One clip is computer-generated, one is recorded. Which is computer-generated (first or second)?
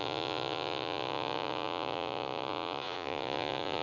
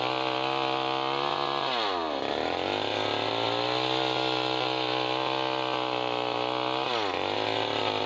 first